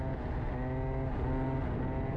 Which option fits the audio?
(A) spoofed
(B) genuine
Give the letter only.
B